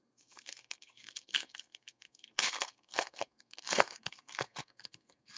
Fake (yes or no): yes